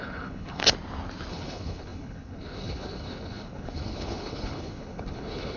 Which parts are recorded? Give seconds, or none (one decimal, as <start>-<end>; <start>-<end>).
0.6-1.3